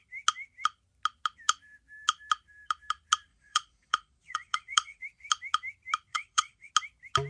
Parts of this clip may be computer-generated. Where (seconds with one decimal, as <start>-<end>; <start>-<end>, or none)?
3.3-5.0; 6.1-6.7